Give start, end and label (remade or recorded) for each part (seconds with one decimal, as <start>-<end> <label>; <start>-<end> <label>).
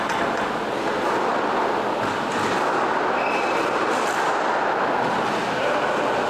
0.0-6.3 recorded